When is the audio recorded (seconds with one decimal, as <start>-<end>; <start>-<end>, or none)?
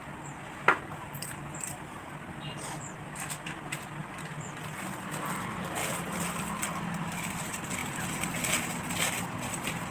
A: 0.0-9.9